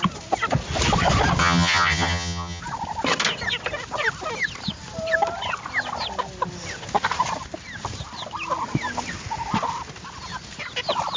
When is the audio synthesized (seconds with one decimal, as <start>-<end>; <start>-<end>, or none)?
1.4-2.6